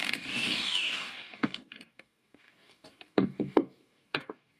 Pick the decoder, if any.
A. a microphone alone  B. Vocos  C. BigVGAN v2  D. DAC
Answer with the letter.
D